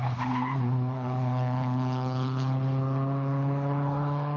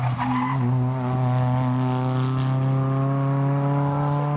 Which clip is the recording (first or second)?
second